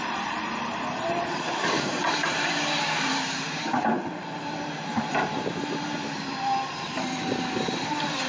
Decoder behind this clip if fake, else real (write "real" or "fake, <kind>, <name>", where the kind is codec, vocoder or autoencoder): fake, vocoder, BigVGAN v2